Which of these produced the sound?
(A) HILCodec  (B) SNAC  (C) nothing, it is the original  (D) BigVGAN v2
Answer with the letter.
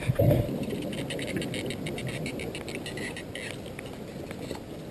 C